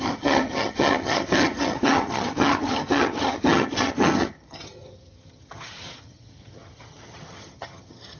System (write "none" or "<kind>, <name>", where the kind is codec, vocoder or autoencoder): vocoder, HiFi-GAN